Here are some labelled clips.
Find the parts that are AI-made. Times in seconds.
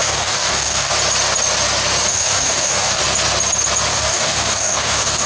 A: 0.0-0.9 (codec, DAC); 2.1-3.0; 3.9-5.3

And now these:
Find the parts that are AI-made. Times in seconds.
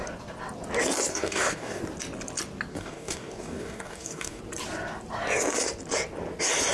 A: 1.1-1.8 (codec, DAC); 2.7-4.4